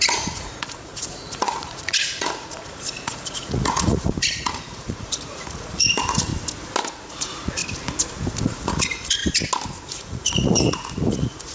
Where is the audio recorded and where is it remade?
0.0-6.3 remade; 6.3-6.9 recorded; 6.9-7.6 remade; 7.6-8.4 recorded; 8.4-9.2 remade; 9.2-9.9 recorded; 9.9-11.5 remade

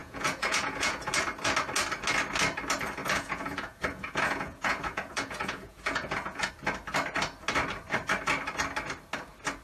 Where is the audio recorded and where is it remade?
0.0-1.1 remade; 1.1-3.0 recorded; 3.0-6.5 remade; 6.5-9.6 recorded

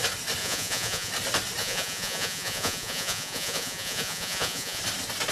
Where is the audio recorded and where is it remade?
0.0-0.4 recorded; 0.4-1.1 remade; 1.1-1.6 recorded; 1.6-4.8 remade; 4.8-5.3 recorded

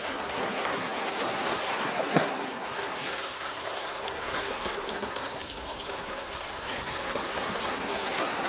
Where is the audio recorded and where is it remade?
0.0-8.5 remade

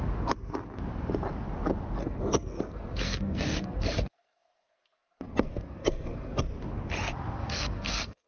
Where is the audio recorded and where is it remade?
0.0-2.0 recorded; 2.0-6.4 remade; 6.4-7.4 recorded; 7.4-8.3 remade